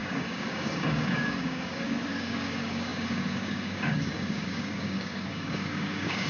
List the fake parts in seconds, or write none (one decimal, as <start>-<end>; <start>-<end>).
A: 0.0-6.3